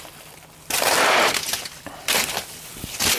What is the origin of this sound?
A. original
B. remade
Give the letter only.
A